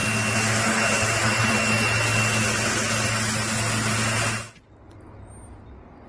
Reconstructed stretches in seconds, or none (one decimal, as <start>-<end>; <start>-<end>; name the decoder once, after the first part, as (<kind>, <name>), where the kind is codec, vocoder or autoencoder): none